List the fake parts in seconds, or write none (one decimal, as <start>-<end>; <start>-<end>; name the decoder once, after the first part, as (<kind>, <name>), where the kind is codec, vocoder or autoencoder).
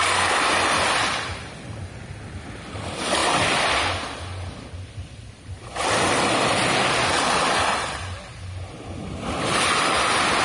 none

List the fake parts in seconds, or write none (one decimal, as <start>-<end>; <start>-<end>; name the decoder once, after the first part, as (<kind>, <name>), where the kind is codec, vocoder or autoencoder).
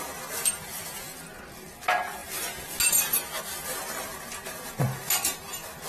none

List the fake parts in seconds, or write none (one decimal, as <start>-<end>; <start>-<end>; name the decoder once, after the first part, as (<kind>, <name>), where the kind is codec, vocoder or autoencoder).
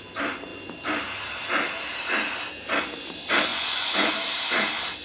3.5-4.1 (vocoder, Vocos)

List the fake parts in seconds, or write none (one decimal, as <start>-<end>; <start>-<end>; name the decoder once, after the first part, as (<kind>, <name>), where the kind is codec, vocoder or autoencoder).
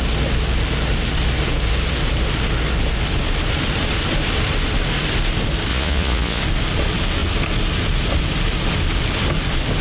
5.7-6.4 (vocoder, Vocos)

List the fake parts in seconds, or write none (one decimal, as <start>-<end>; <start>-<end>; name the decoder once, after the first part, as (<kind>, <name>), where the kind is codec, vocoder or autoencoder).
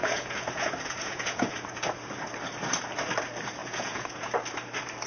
0.0-1.5 (vocoder, Vocos); 3.6-4.3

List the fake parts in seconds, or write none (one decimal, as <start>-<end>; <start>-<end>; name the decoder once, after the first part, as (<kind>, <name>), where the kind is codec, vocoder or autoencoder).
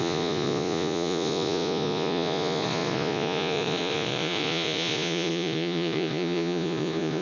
0.0-7.2 (vocoder, Vocos)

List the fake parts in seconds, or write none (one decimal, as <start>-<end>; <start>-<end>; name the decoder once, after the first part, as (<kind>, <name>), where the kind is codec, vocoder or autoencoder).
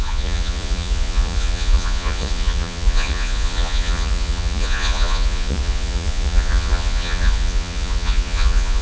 0.0-8.8 (vocoder, Vocos)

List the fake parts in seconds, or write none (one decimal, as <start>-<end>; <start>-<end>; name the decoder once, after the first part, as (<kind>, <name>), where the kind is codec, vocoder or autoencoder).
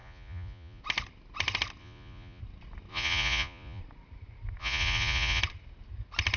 0.0-0.8 (vocoder, Vocos); 1.8-2.4; 2.9-3.8; 4.6-5.4